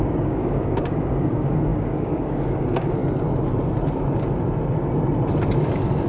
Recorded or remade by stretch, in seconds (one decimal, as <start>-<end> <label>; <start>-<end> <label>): 0.0-3.0 remade; 3.0-6.1 recorded